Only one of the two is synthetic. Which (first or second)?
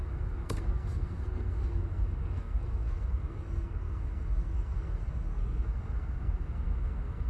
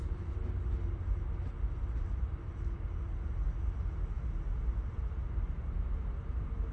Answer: first